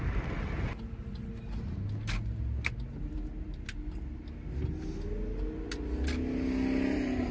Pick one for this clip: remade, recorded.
recorded